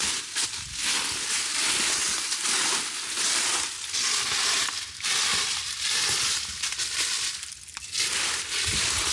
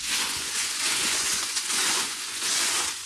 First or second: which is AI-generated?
second